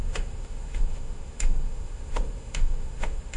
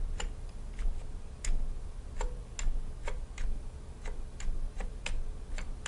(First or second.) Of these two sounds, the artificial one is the first